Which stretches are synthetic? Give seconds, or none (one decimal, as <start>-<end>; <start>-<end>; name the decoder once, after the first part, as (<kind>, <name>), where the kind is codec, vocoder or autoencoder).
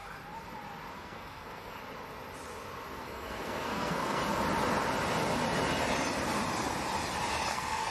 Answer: 0.9-1.8 (codec, SNAC); 3.0-4.2; 7.5-7.9